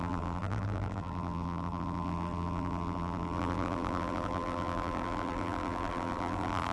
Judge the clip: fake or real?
fake